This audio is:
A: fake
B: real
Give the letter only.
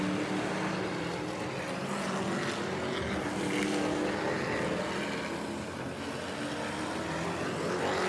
B